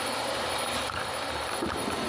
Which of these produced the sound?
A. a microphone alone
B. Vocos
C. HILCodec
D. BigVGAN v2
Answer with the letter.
D